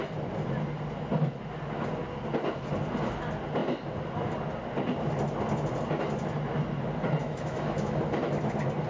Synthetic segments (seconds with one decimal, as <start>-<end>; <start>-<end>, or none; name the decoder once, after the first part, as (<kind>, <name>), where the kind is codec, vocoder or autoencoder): 7.2-8.0 (autoencoder, DAC-VAE)